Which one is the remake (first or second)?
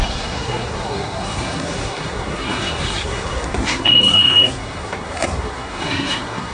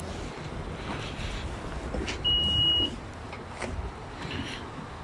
first